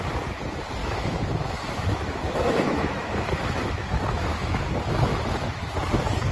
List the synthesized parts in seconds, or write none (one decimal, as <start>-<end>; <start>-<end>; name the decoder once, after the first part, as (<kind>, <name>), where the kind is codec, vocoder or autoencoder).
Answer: 0.8-4.6 (autoencoder, DAC-VAE); 5.1-5.7